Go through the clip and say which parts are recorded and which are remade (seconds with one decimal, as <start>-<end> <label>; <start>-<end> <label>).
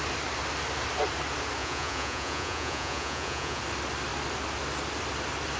0.0-1.6 recorded; 1.6-3.6 remade; 3.6-5.6 recorded